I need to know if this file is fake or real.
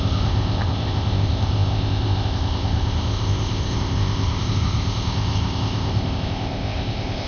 fake